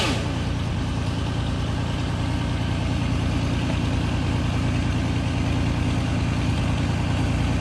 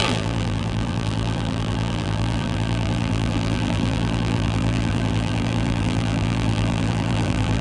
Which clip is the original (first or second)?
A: first